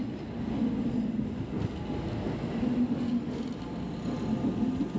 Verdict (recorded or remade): recorded